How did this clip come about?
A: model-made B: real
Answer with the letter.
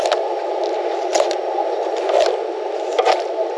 B